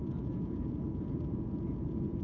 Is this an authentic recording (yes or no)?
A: no